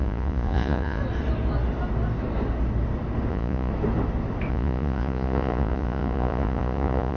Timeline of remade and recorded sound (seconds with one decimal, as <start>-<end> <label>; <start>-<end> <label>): 0.0-1.0 remade; 1.0-3.3 recorded; 3.3-3.7 remade; 3.7-4.5 recorded; 4.5-7.2 remade